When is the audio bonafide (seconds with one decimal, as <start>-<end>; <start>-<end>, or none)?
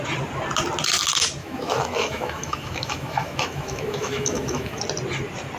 0.0-1.4; 4.8-5.6